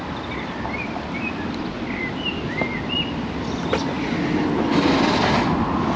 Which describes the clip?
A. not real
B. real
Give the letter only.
B